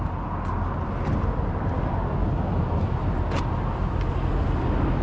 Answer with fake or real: real